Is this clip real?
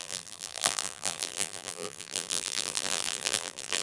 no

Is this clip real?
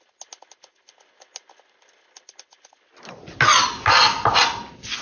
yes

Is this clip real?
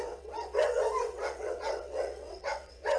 no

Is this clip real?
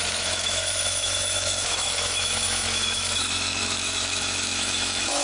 no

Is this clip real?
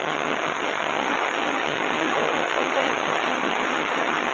no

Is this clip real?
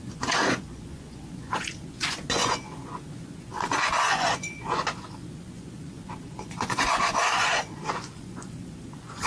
no